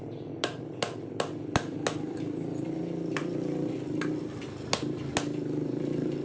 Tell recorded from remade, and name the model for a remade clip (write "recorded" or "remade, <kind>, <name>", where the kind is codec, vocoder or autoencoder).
recorded